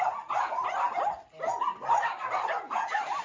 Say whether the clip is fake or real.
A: real